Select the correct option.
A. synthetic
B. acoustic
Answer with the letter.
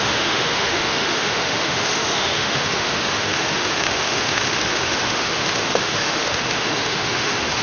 A